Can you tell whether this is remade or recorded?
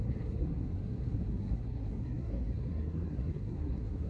remade